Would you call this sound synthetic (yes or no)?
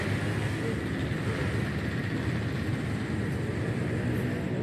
no